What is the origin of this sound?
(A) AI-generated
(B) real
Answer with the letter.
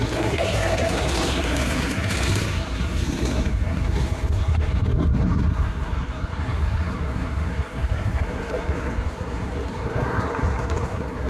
A